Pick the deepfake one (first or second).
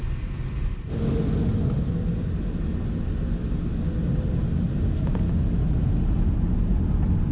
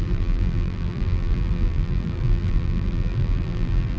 second